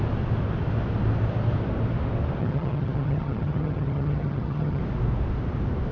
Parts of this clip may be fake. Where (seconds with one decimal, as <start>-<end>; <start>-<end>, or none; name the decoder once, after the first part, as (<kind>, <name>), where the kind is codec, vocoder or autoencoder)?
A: 2.4-4.8 (vocoder, HiFi-GAN)